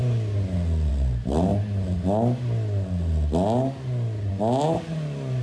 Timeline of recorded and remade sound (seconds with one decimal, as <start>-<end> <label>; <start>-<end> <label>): 0.0-5.4 recorded